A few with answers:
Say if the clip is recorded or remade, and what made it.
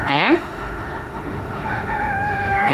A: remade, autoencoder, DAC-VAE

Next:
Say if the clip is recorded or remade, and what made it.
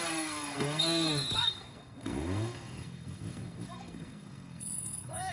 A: remade, codec, SNAC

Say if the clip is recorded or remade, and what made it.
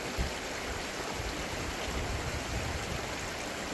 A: recorded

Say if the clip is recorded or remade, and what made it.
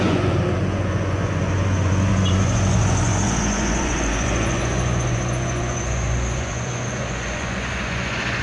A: remade, vocoder, Vocos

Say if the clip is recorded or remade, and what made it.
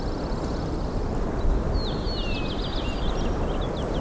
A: recorded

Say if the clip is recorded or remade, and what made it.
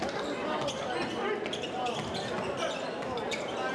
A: recorded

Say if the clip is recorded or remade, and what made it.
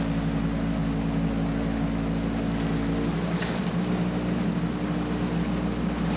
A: recorded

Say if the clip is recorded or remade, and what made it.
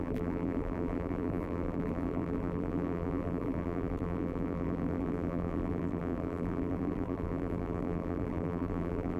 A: remade, vocoder, BigVGAN v2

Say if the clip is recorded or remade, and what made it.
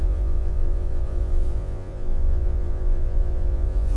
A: remade, vocoder, Vocos